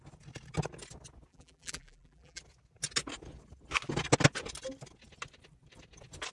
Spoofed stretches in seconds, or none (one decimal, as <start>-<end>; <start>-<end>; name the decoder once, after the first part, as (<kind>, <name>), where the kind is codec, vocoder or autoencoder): 1.3-2.4 (vocoder, BigVGAN v2)